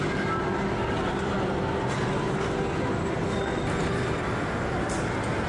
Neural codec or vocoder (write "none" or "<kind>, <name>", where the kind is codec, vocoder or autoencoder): none